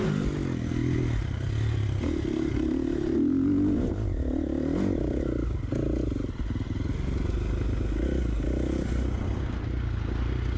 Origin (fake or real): real